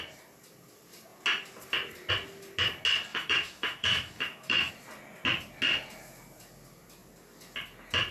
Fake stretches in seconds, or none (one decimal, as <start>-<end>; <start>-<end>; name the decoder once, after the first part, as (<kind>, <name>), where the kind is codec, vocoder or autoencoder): 3.1-4.7 (autoencoder, DAC-VAE)